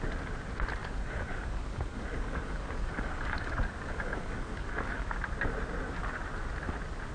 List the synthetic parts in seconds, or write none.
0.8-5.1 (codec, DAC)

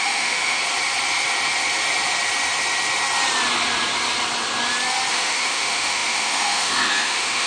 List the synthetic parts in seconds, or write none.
0.0-0.6 (autoencoder, DAC-VAE); 5.1-7.5

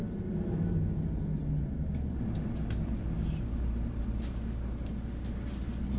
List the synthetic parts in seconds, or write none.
none

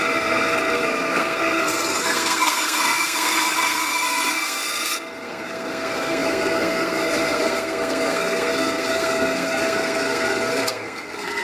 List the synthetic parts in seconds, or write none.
0.0-11.4 (codec, SNAC)